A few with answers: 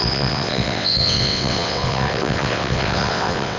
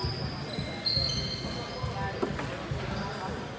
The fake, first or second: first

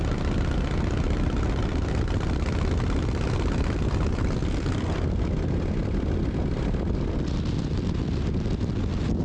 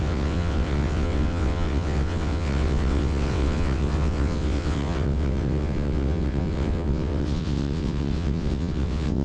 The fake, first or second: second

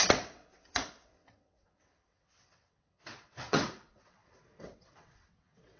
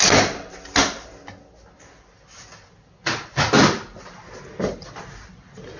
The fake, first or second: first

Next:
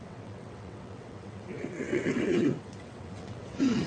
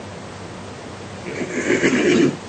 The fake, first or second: first